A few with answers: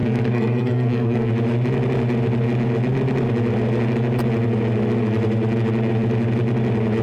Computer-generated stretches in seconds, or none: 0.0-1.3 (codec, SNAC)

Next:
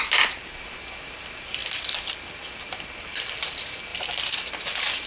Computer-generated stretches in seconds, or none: none

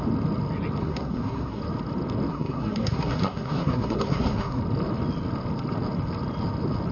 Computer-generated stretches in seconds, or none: 0.8-1.6 (codec, SNAC); 2.3-4.6